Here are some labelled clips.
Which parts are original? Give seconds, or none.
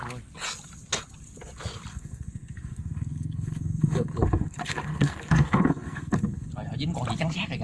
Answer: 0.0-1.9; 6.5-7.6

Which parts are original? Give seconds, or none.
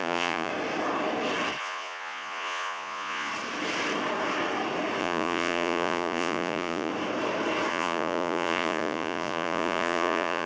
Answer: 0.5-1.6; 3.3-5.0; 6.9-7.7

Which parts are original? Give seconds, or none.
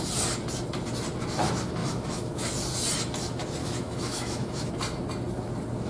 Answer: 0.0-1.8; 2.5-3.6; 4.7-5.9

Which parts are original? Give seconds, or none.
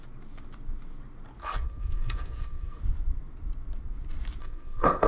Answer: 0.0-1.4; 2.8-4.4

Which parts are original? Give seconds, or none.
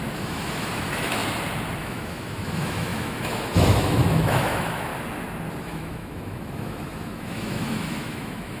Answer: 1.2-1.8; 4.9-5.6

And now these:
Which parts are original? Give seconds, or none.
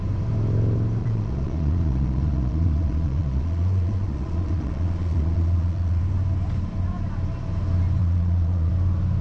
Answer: 0.0-1.0; 6.0-8.0; 8.7-9.2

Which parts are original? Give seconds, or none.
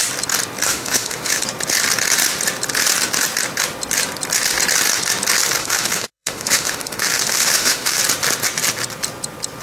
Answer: 0.0-0.7; 1.4-5.6; 8.0-9.6